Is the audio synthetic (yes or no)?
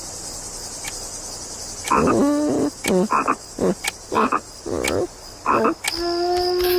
no